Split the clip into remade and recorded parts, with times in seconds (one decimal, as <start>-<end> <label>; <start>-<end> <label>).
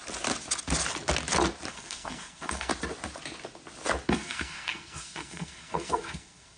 0.0-1.7 recorded; 1.7-2.7 remade; 2.7-4.1 recorded; 4.1-6.6 remade